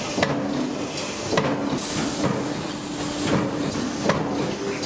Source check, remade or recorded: recorded